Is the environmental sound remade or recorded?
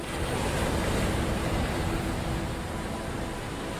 recorded